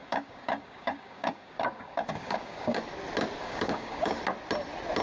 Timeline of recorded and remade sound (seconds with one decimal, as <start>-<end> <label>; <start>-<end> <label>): 0.0-2.8 remade; 2.8-3.4 recorded; 3.4-4.2 remade; 4.2-5.0 recorded